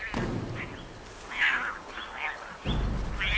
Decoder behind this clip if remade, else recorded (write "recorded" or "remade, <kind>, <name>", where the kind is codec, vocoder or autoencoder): recorded